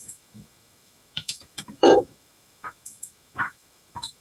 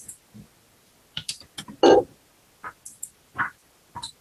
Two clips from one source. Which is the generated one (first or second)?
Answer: first